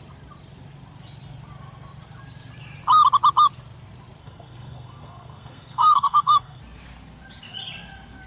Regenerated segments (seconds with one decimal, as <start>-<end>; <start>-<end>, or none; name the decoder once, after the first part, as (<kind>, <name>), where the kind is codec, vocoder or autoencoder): 4.2-6.6 (codec, SNAC)